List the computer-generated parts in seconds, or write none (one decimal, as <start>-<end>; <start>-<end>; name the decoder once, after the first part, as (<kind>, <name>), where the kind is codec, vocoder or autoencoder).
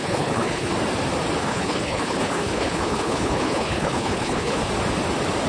0.0-0.7 (codec, HILCodec); 1.4-4.7